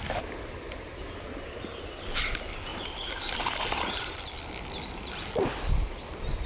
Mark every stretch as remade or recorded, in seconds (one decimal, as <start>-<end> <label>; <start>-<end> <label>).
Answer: 0.0-2.7 recorded; 2.7-4.8 remade; 4.8-6.5 recorded